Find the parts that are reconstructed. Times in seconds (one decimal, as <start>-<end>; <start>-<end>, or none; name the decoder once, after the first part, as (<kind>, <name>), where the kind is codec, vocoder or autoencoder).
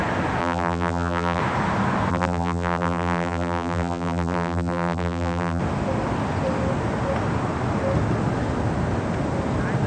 0.4-1.4 (vocoder, BigVGAN v2); 2.1-5.6